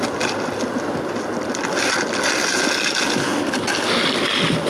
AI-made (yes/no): no